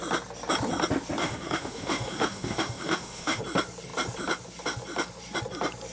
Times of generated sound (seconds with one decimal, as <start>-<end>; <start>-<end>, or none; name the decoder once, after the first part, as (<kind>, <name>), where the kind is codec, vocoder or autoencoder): 1.2-3.4 (autoencoder, DAC-VAE)